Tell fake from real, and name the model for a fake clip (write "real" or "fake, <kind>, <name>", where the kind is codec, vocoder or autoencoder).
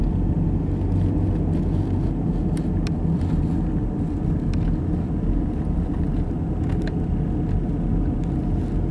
real